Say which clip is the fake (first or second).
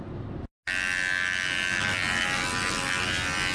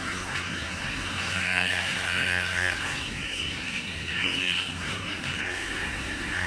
second